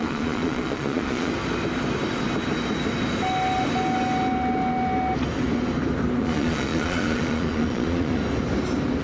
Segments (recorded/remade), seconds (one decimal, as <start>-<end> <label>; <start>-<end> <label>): 0.0-1.3 remade; 1.3-6.2 recorded; 6.2-8.2 remade; 8.2-9.0 recorded